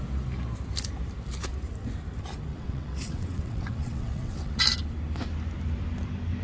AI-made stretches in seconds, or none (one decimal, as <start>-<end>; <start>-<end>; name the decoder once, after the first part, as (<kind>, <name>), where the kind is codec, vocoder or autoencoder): 2.5-4.6 (vocoder, WaveNeXt)